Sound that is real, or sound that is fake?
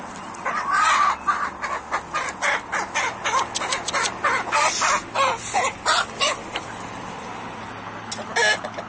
real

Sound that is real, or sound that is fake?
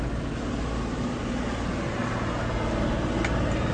real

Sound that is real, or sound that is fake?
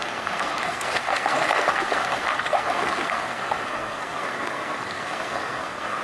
fake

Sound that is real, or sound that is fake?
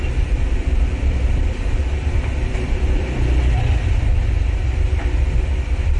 fake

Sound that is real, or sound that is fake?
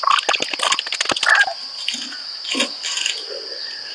real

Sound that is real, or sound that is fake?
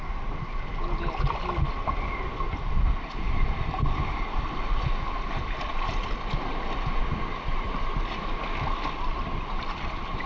real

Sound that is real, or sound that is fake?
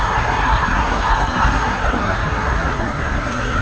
fake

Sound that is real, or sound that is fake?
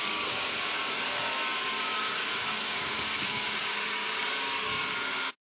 fake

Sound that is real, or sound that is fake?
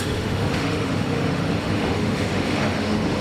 fake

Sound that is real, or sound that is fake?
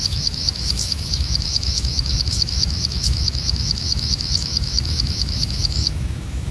fake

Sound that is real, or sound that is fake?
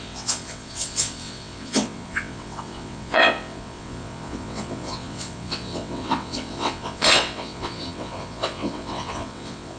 fake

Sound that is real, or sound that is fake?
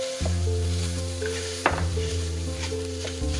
fake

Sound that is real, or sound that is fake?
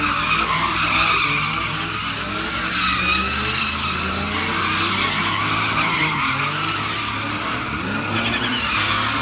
real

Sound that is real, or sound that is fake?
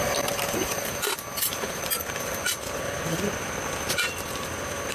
fake